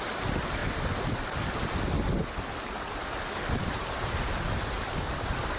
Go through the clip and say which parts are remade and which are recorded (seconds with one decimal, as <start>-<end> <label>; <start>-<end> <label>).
0.0-0.6 remade; 0.6-3.6 recorded; 3.6-5.6 remade